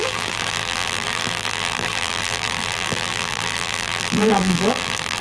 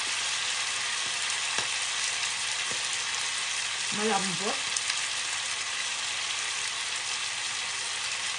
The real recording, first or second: second